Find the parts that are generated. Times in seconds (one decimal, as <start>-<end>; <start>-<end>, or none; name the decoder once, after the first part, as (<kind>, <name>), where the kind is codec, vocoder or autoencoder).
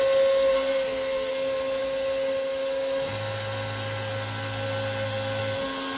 0.5-1.3 (codec, SNAC)